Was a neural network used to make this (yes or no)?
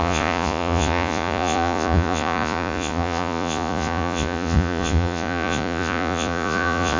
yes